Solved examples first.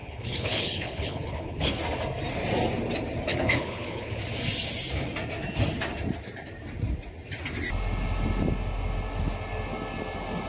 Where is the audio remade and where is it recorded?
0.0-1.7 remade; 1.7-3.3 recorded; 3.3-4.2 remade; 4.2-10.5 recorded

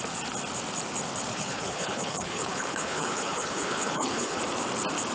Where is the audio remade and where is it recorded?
0.0-1.3 recorded; 1.3-4.4 remade; 4.4-5.1 recorded

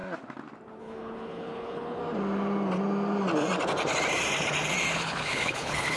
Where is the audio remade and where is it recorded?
0.0-0.8 recorded; 0.8-2.0 remade; 2.0-4.9 recorded; 4.9-6.0 remade

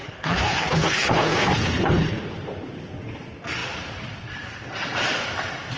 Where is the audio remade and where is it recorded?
0.0-2.2 remade; 2.2-5.8 recorded

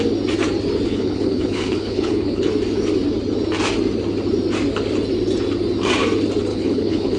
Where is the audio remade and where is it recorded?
0.0-0.9 recorded; 0.9-2.5 remade; 2.5-6.5 recorded; 6.5-7.2 remade

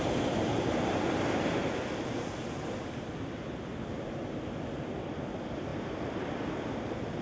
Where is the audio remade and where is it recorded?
0.0-7.2 recorded

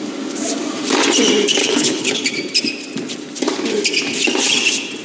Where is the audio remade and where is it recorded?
0.0-1.6 recorded; 1.6-2.2 remade; 2.2-5.0 recorded